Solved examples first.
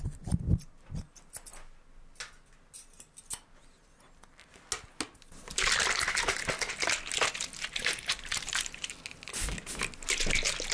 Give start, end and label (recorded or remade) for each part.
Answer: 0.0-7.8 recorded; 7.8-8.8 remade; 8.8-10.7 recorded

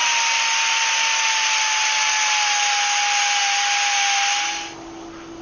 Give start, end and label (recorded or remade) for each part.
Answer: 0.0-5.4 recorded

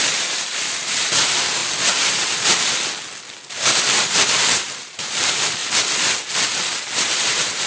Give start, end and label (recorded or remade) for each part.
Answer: 0.0-1.6 remade; 1.6-3.5 recorded; 3.5-5.6 remade; 5.6-7.1 recorded; 7.1-7.7 remade

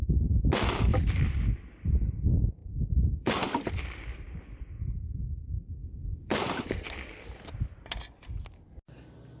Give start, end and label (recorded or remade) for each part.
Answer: 0.0-0.9 recorded; 0.9-1.5 remade; 1.5-2.6 recorded; 2.6-3.7 remade; 3.7-5.8 recorded; 5.8-7.9 remade; 7.9-9.4 recorded